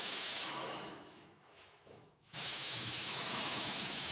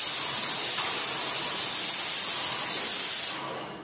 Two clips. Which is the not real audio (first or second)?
first